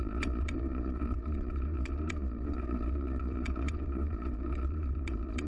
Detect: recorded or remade remade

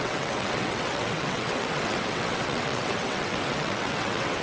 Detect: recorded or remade remade